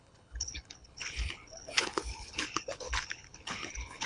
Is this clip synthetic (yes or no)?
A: yes